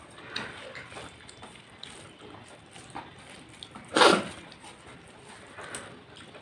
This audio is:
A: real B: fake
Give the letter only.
A